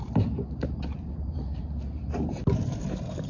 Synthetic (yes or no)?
yes